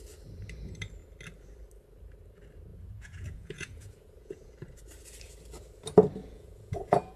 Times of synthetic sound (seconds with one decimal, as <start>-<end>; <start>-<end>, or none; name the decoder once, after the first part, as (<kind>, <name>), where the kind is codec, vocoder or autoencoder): 2.7-4.5 (vocoder, Vocos); 6.2-7.2